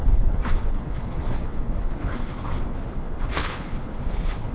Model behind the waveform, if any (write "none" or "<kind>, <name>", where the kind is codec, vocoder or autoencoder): codec, HILCodec